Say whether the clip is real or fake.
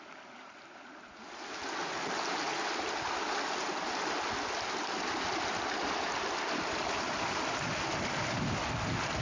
real